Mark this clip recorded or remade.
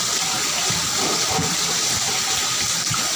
recorded